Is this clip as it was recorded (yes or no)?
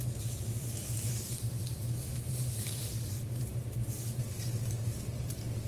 no